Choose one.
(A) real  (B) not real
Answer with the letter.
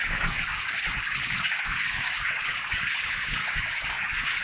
B